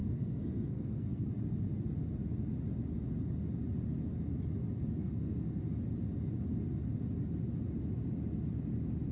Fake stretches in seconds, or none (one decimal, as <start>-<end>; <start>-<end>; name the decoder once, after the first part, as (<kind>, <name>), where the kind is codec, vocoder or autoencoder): 0.0-1.3 (codec, SNAC); 5.0-5.6